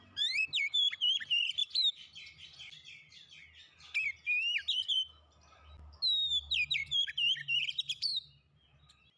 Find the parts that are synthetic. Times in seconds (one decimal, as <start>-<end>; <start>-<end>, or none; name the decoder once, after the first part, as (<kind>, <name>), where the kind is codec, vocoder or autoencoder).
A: 0.0-1.6 (vocoder, BigVGAN v2); 6.7-8.1